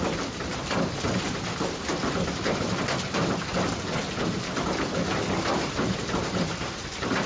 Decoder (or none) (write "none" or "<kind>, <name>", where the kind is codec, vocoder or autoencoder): none